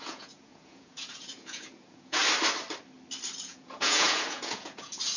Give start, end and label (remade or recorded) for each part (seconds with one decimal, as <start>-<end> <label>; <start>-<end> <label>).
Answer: 0.0-2.2 remade; 2.2-3.4 recorded; 3.4-5.2 remade